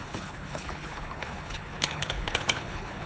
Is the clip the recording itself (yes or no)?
no